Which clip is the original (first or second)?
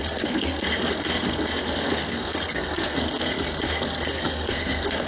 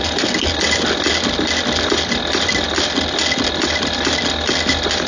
second